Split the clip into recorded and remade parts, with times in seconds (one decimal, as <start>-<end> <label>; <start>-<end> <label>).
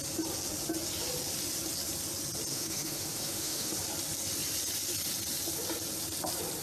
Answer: 0.0-2.5 recorded; 2.5-3.7 remade; 3.7-6.6 recorded